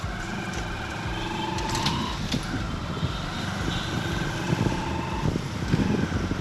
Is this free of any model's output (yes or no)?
yes